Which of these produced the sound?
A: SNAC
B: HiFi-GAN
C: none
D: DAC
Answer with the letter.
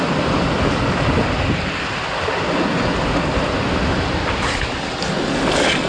C